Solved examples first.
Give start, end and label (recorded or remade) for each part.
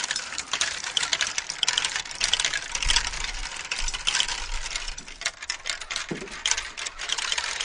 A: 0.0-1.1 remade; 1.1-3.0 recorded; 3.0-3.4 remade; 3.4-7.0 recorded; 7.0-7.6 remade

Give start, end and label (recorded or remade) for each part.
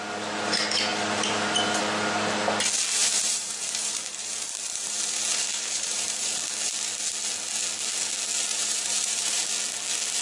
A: 0.0-3.0 recorded; 3.0-6.3 remade; 6.3-8.5 recorded; 8.5-9.5 remade; 9.5-10.2 recorded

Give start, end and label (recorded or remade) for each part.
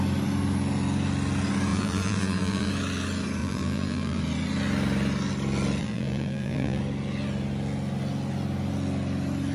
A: 0.0-1.7 recorded; 1.7-2.7 remade; 2.7-3.4 recorded; 3.4-4.2 remade; 4.2-5.8 recorded; 5.8-6.8 remade; 6.8-9.5 recorded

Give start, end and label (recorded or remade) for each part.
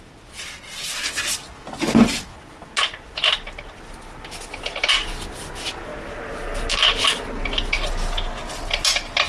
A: 0.0-9.3 recorded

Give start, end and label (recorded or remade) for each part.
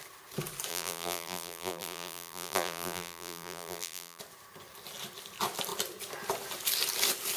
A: 0.0-0.7 recorded; 0.7-4.2 remade; 4.2-7.4 recorded